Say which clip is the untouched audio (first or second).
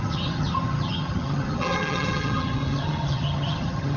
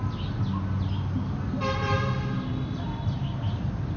second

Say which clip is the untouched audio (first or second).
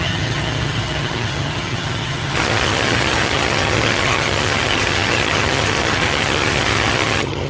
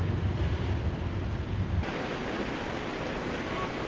second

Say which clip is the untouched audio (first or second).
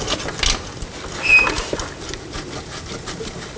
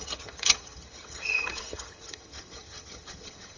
first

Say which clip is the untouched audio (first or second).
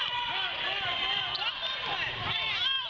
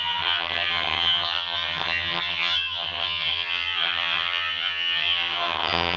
first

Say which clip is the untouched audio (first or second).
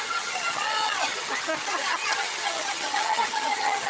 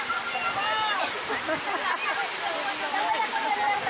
second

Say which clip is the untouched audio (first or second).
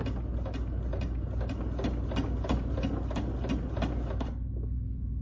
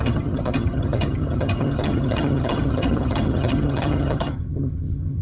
first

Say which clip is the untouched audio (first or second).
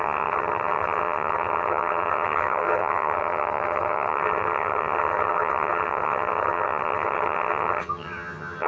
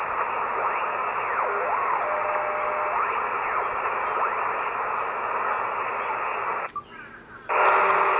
second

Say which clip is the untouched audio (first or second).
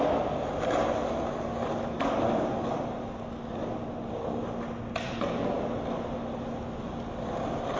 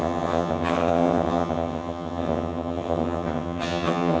first